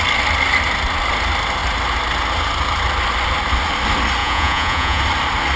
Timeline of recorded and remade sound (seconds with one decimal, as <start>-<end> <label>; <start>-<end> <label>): 0.0-4.2 recorded; 4.2-5.0 remade; 5.0-5.6 recorded